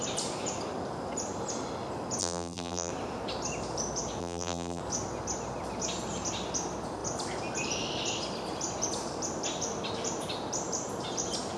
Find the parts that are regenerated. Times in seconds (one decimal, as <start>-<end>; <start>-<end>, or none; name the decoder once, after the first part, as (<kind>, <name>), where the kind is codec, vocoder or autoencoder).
2.2-2.9 (vocoder, BigVGAN v2); 4.2-4.8